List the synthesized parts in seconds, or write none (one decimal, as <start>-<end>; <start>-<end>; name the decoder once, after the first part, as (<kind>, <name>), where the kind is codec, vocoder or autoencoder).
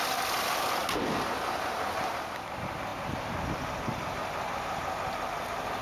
none